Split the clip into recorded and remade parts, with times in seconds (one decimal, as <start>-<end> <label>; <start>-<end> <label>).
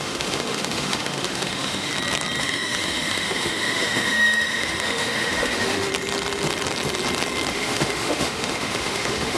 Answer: 0.0-1.9 remade; 1.9-2.4 recorded; 2.4-5.9 remade; 5.9-7.5 recorded; 7.5-9.4 remade